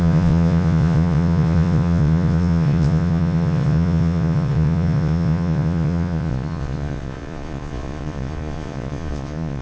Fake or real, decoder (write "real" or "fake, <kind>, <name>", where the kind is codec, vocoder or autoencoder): fake, vocoder, Vocos